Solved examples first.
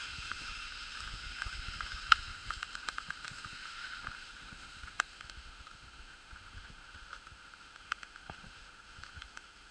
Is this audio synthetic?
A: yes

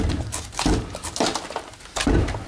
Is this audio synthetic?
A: no